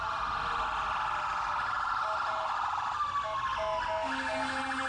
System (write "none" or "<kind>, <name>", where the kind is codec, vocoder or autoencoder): none